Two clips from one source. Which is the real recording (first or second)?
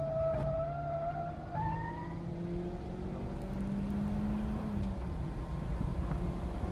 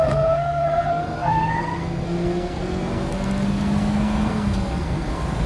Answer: first